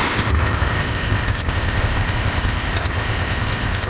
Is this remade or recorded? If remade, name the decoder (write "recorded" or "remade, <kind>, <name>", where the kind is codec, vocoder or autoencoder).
remade, codec, ZipCodec